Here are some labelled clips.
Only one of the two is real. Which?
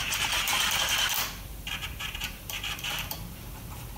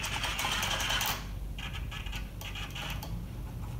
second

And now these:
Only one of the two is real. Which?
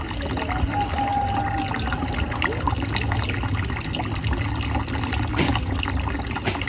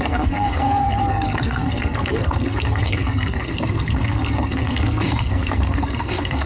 first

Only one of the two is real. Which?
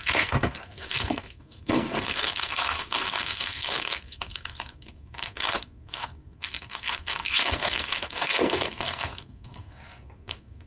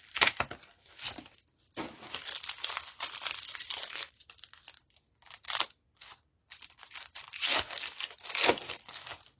second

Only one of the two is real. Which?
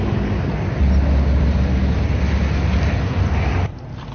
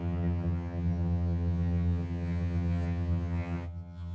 first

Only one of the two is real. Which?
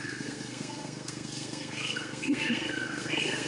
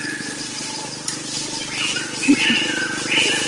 second